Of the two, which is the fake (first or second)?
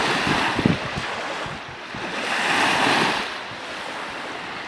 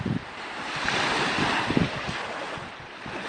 second